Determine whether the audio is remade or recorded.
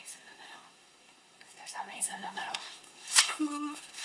remade